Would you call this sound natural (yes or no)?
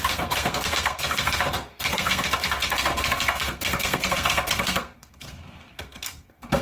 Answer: no